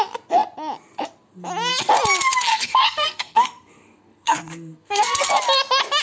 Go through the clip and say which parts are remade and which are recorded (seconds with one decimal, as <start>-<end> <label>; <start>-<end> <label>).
0.0-2.5 recorded; 2.5-5.3 remade; 5.3-6.0 recorded